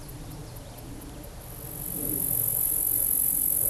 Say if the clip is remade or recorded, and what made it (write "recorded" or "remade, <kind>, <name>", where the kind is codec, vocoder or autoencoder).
recorded